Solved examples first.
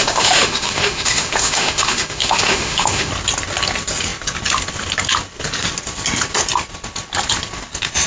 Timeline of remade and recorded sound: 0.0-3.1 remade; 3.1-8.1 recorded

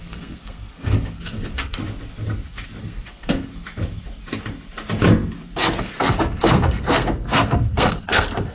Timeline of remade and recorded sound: 0.0-1.8 remade; 1.8-2.8 recorded; 2.8-3.5 remade; 3.5-5.8 recorded; 5.8-8.5 remade

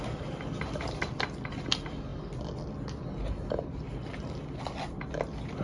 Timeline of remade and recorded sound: 0.0-5.6 recorded

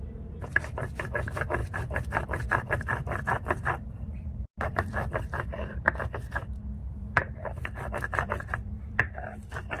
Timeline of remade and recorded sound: 0.0-1.6 recorded; 1.6-6.0 remade; 6.0-6.8 recorded; 6.8-9.0 remade; 9.0-9.8 recorded

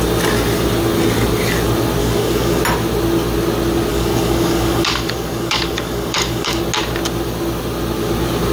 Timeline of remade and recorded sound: 0.0-2.0 recorded; 2.0-2.6 remade; 2.6-3.9 recorded; 3.9-6.6 remade; 6.6-8.5 recorded

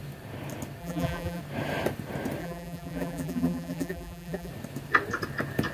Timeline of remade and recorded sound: 0.0-0.8 recorded; 0.8-1.4 remade; 1.4-2.4 recorded; 2.4-4.5 remade; 4.5-5.7 recorded